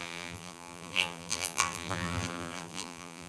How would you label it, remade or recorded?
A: remade